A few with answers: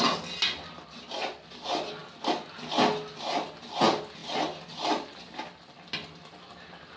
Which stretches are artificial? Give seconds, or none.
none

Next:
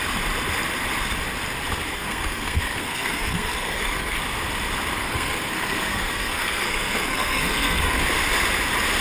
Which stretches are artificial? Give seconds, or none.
1.9-4.2 (codec, SNAC); 5.0-8.0